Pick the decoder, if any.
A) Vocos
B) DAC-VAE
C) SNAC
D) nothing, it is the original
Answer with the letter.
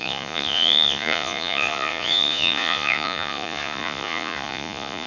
A